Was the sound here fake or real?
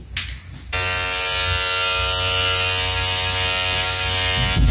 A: real